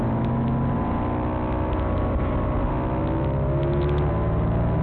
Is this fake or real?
real